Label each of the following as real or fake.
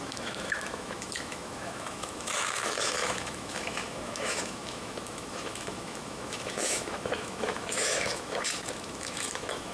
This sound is fake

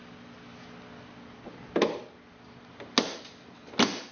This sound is real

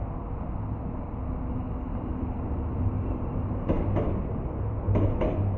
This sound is real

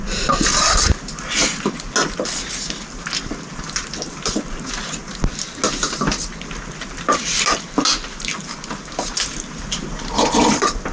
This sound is real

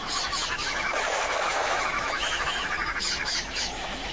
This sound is fake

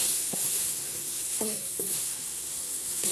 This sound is fake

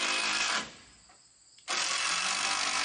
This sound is real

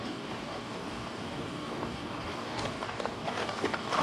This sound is fake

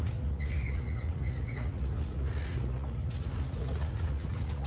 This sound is fake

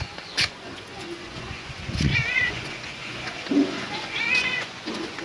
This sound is fake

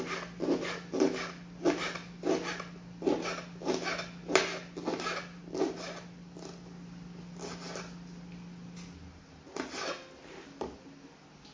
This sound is real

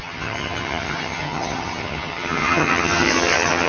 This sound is fake